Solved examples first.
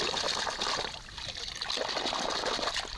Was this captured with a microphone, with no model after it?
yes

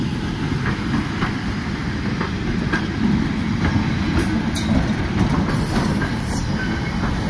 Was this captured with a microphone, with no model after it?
yes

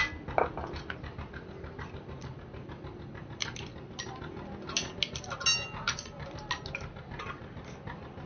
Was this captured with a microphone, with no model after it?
yes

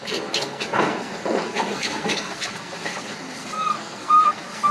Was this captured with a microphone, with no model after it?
no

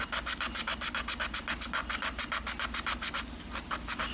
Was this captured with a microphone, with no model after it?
yes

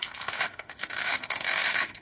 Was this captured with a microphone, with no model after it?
no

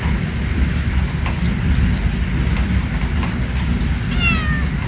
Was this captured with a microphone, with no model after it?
yes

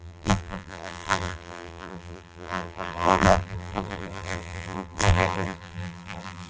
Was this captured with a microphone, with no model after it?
no